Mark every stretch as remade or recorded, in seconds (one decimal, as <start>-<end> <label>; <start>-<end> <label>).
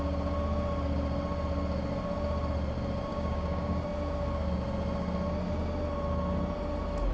0.0-3.1 recorded; 3.1-3.8 remade; 3.8-7.1 recorded